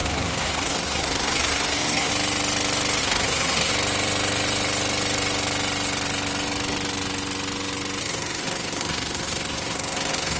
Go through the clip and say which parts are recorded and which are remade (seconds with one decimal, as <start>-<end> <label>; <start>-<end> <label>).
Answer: 0.0-2.1 remade; 2.1-3.0 recorded; 3.0-3.7 remade; 3.7-8.0 recorded; 8.0-10.4 remade